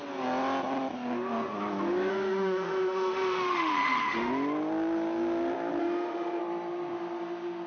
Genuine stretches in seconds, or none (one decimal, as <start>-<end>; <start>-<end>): 0.0-2.1; 4.3-5.8; 6.4-7.7